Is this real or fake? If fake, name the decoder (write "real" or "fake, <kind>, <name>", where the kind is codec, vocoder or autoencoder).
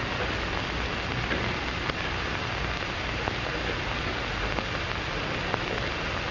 real